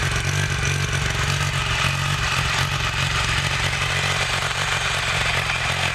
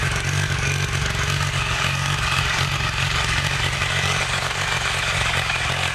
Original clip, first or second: first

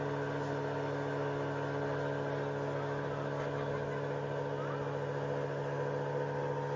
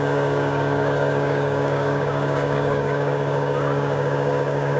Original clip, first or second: first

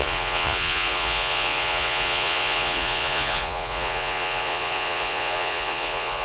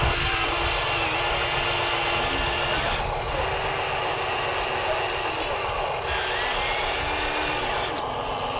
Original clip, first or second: second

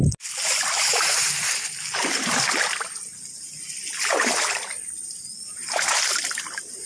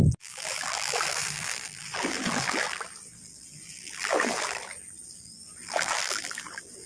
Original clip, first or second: first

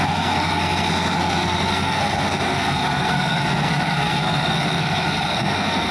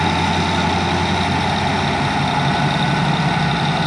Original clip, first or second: second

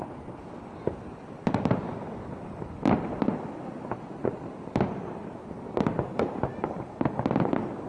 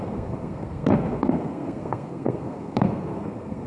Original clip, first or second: first